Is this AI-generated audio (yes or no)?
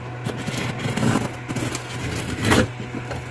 no